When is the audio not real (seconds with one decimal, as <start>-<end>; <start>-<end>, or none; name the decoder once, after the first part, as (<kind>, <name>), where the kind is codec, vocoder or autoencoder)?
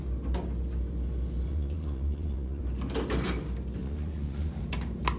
1.5-2.6 (vocoder, Vocos); 3.8-4.6